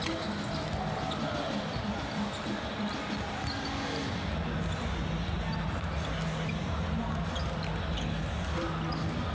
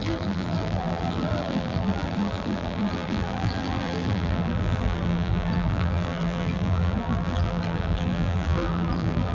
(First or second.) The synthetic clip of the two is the second